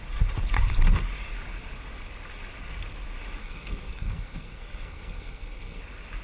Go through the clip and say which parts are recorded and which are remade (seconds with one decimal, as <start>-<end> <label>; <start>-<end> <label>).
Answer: 0.0-3.4 recorded; 3.4-5.8 remade; 5.8-6.2 recorded